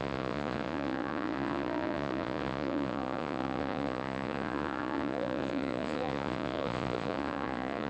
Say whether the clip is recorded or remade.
remade